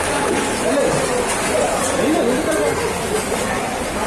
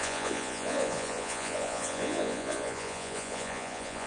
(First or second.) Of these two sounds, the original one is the first